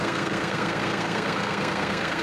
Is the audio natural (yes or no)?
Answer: no